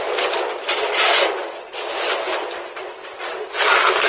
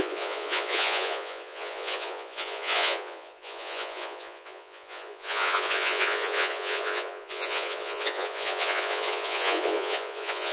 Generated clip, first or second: second